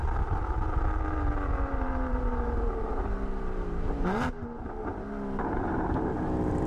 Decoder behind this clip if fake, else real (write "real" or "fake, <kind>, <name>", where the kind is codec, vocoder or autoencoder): fake, vocoder, BigVGAN v2